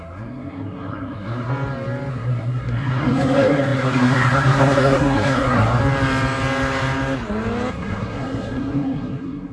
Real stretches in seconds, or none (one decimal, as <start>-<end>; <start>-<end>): 1.5-2.1; 5.8-7.7